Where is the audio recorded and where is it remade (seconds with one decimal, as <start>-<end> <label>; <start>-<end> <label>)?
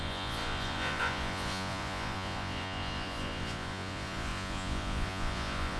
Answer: 0.0-5.8 remade